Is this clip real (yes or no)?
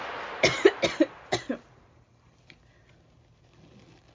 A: yes